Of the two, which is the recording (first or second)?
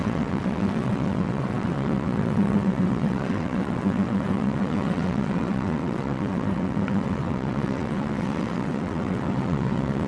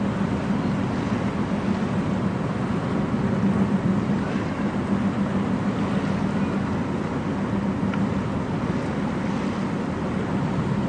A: second